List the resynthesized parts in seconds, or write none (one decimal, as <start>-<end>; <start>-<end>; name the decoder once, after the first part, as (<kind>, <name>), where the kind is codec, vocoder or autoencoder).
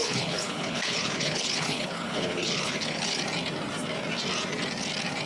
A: 0.0-3.2 (codec, HILCodec)